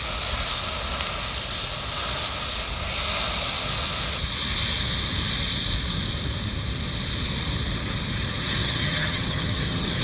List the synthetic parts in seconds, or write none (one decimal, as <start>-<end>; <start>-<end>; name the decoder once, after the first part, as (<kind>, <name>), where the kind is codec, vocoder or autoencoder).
8.6-10.0 (vocoder, HiFi-GAN)